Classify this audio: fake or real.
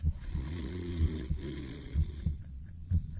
fake